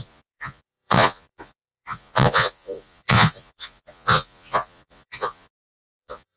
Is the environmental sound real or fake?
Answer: fake